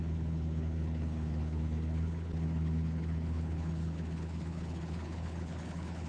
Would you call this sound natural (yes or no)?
no